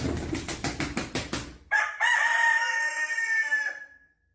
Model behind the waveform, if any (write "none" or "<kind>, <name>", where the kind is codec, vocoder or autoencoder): none